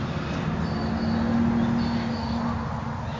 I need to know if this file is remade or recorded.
recorded